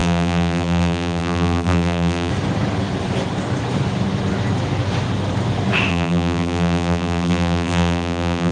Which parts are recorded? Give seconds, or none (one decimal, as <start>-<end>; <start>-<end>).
2.3-5.9